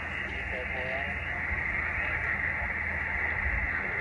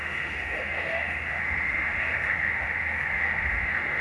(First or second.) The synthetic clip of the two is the second